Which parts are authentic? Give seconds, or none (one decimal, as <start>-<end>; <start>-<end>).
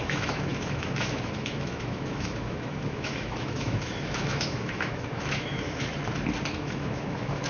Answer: 5.9-6.5